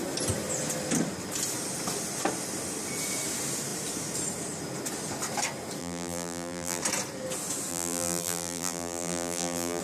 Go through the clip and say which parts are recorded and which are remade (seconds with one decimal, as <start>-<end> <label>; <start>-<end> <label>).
0.0-5.8 recorded; 5.8-6.8 remade; 6.8-7.7 recorded; 7.7-9.8 remade